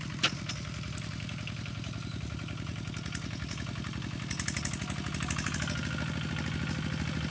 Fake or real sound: real